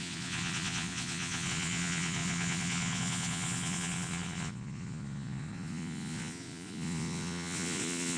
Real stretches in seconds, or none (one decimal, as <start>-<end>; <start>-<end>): none